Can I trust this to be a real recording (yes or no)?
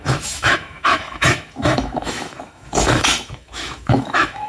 no